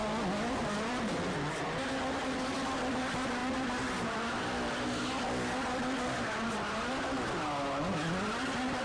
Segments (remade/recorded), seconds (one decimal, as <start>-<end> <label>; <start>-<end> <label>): 0.0-8.8 recorded